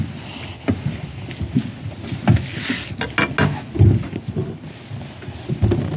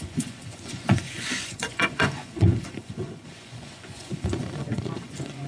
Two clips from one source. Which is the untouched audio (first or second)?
first